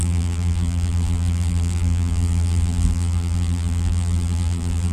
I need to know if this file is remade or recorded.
remade